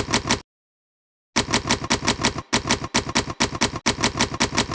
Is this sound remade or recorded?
recorded